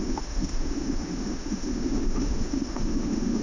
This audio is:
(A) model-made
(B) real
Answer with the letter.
A